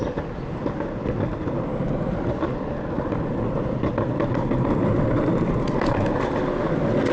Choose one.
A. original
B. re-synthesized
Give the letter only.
A